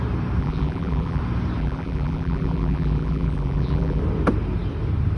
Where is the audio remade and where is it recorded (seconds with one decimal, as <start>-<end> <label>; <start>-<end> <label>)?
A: 0.0-0.4 recorded; 0.4-1.2 remade; 1.2-1.6 recorded; 1.6-4.0 remade; 4.0-5.2 recorded